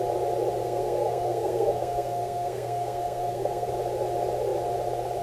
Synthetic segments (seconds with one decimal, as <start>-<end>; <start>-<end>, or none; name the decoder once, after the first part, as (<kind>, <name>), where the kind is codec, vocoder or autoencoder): 0.6-3.7 (codec, SNAC)